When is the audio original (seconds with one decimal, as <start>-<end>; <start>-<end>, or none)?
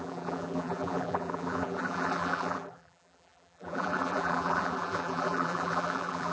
none